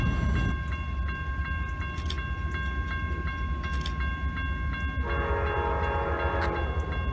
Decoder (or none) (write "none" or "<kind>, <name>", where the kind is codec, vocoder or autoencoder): none